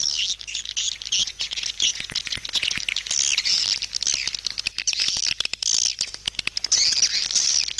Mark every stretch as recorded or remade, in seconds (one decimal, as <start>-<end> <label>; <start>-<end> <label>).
0.0-1.2 recorded; 1.2-2.8 remade; 2.8-7.8 recorded